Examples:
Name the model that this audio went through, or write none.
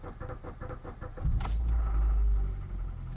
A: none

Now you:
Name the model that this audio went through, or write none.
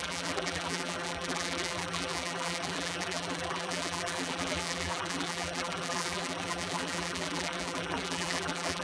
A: vocoder, BigVGAN v2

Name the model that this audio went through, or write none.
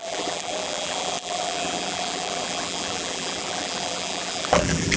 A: vocoder, BigVGAN v2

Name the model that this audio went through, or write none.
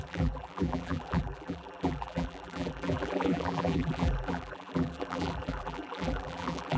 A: vocoder, BigVGAN v2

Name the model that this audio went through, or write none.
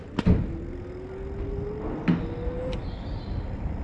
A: none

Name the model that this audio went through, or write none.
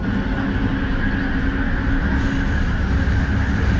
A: none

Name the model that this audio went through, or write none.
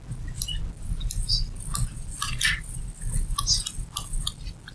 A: none